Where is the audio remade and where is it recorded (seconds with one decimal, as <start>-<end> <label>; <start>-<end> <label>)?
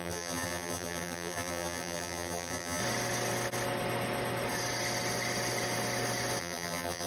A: 0.0-2.8 remade; 2.8-6.4 recorded; 6.4-7.1 remade